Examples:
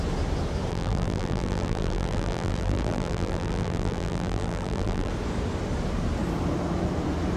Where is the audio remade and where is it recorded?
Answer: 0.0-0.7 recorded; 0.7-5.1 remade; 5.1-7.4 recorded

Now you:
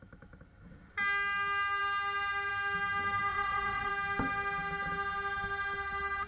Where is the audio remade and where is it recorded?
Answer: 0.0-3.3 recorded; 3.3-3.9 remade; 3.9-6.3 recorded

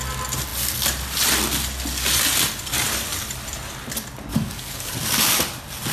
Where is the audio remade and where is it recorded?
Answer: 0.0-4.3 recorded; 4.3-4.9 remade; 4.9-5.9 recorded

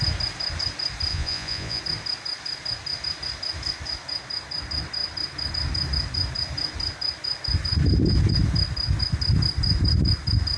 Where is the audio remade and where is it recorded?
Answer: 0.0-1.1 recorded; 1.1-1.8 remade; 1.8-10.6 recorded

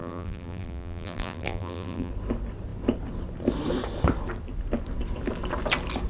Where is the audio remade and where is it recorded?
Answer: 0.0-2.1 remade; 2.1-6.1 recorded